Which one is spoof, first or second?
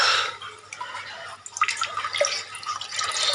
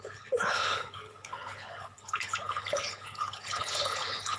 second